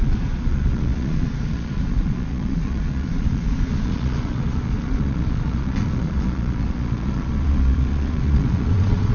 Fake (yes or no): yes